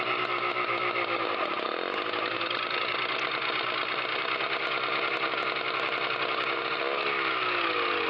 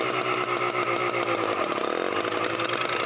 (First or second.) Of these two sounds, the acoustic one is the first